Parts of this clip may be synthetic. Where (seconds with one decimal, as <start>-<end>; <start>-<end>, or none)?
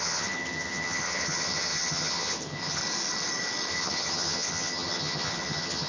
0.0-2.8; 3.7-5.9